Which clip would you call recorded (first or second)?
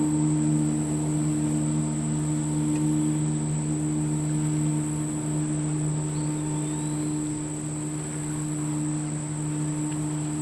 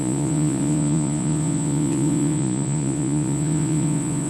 first